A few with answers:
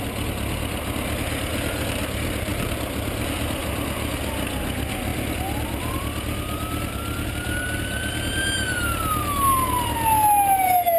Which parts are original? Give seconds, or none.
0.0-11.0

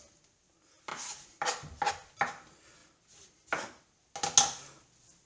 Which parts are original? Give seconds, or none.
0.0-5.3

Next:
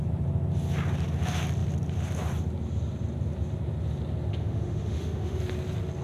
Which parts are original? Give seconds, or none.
0.0-4.3; 5.4-6.0